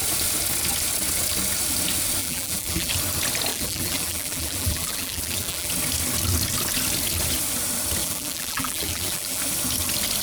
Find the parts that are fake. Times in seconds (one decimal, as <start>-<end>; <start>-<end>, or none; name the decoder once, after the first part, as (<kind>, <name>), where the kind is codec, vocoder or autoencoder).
2.2-2.9 (vocoder, BigVGAN v2); 3.5-5.7; 8.0-9.4